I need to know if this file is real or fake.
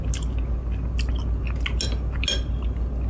real